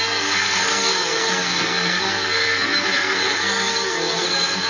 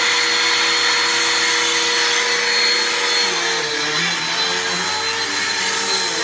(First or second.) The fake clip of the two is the first